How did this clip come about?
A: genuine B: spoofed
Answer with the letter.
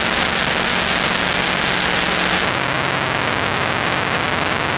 A